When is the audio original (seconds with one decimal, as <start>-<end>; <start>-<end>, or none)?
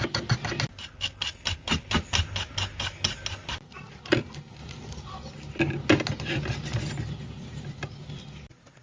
0.0-8.8